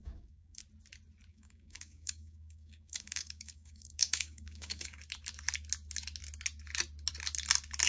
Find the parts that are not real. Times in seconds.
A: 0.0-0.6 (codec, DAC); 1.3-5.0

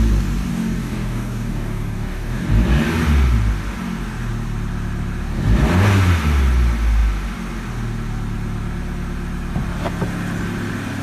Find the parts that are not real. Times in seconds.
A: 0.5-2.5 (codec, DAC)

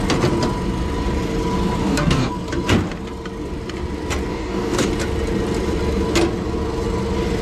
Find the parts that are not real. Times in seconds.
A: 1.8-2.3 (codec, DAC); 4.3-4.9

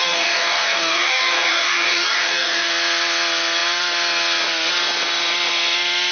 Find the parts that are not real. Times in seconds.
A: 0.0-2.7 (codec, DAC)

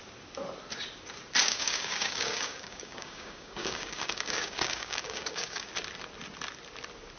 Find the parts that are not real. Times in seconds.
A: 1.4-5.7 (codec, DAC)

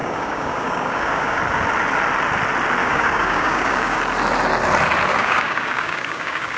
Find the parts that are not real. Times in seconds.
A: 0.0-1.4 (codec, DAC); 2.8-4.0; 5.1-6.6